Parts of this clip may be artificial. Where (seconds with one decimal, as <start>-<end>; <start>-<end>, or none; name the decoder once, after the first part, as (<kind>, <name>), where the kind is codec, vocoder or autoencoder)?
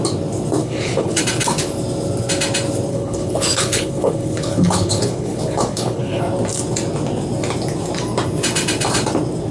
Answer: 0.6-1.2 (codec, HILCodec); 2.9-6.2